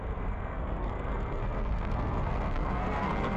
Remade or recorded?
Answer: remade